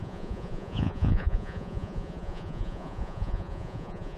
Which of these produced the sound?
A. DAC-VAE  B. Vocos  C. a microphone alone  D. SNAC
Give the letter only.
B